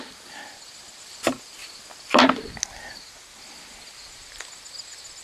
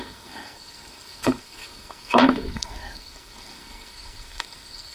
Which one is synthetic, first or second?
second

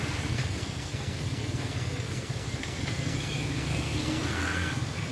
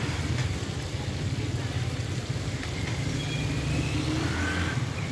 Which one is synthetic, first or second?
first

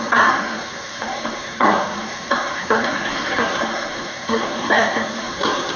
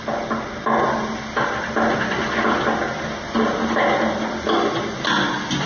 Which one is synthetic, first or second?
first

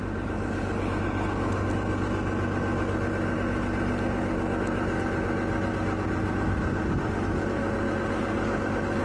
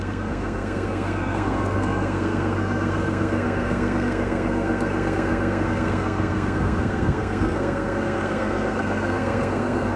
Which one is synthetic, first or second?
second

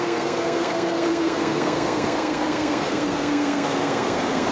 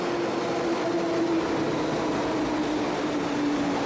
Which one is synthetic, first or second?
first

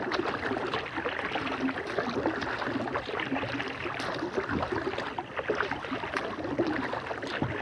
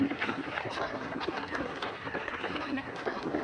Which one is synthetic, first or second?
second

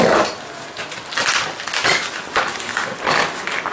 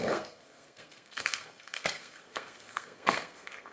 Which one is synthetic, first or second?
second